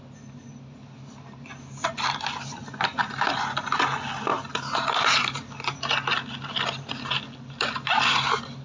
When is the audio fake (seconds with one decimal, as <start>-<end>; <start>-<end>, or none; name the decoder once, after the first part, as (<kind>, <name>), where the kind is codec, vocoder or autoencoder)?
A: none